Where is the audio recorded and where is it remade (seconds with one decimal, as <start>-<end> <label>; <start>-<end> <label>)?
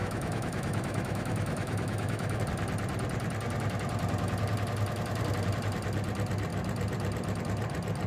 0.0-2.4 remade; 2.4-8.1 recorded